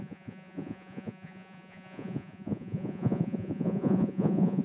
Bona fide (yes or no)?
no